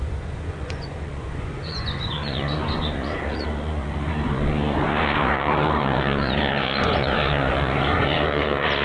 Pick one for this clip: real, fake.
fake